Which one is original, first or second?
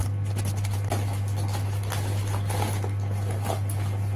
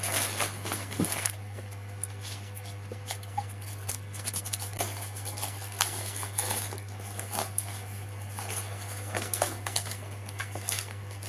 first